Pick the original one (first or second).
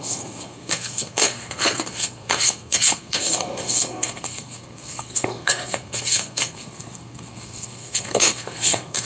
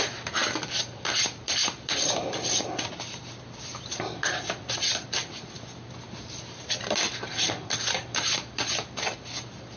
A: second